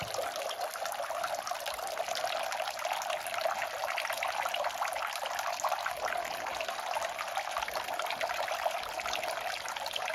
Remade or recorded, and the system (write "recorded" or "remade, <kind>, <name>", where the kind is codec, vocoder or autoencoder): recorded